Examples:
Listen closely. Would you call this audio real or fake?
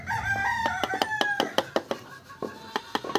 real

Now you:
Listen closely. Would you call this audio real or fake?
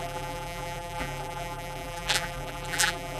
fake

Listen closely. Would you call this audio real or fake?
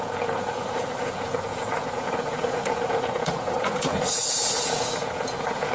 fake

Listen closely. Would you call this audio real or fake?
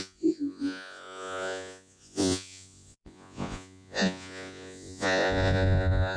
fake